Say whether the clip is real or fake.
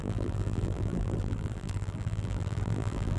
fake